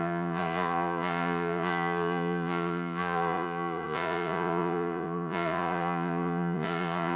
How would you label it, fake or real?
fake